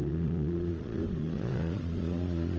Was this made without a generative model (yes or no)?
no